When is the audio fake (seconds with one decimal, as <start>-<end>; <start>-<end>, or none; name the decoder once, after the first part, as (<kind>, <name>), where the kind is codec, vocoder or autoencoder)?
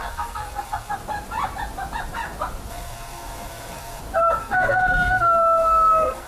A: 0.0-0.9 (codec, SNAC); 2.7-4.0; 4.4-6.3